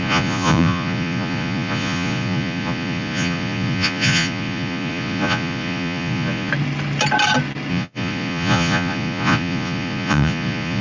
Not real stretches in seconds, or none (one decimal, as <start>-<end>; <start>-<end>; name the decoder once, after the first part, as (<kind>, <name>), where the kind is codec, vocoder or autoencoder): 0.0-6.5 (vocoder, Vocos); 7.7-10.8